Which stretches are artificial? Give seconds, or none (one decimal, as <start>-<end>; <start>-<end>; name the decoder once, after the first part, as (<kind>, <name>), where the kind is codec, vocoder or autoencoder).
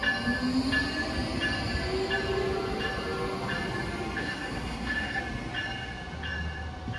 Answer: 4.2-5.2 (codec, SNAC)